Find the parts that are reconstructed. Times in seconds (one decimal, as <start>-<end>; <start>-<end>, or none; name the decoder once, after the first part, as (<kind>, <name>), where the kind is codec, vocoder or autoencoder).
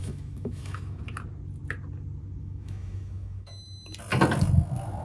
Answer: 0.0-1.0 (autoencoder, DAC-VAE); 2.4-3.6